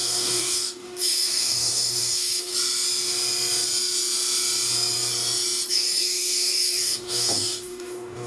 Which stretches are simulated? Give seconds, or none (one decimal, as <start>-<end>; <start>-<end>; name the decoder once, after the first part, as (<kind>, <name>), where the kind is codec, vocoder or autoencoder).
0.0-2.5 (codec, DAC); 5.7-8.3